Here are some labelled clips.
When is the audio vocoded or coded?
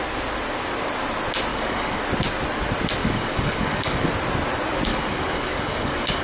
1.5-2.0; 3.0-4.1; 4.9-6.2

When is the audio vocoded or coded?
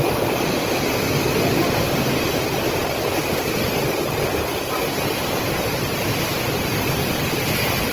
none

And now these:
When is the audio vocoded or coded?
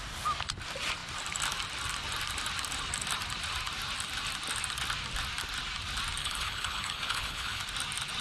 6.2-7.6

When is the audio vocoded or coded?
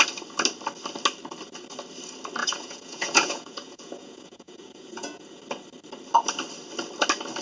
2.4-5.4